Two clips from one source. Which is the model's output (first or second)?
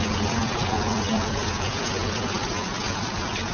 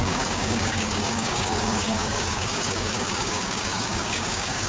second